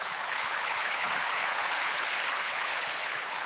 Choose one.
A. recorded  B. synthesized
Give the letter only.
B